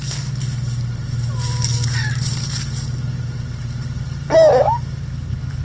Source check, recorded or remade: recorded